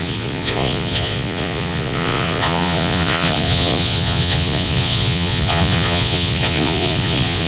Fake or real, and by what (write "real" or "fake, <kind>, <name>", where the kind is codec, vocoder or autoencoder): fake, vocoder, Vocos